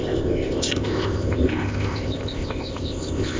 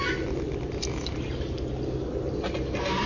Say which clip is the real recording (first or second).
second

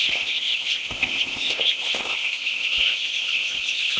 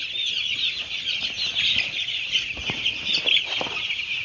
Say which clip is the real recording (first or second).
second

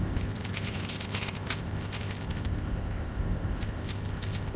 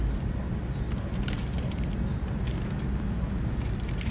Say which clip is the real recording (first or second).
second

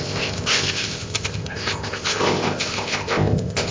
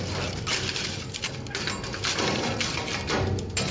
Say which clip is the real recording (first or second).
second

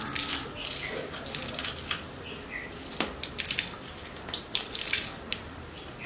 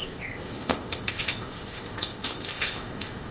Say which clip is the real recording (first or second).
first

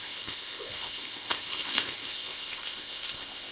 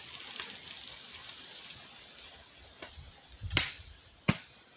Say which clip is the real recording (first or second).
second